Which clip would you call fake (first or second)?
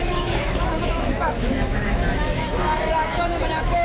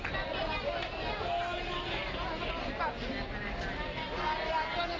first